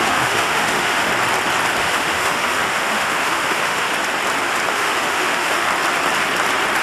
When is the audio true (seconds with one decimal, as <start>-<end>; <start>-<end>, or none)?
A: 1.1-1.8; 3.9-4.7; 5.7-6.8